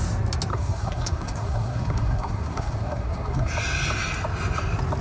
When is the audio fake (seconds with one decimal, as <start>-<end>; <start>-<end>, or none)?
0.5-3.5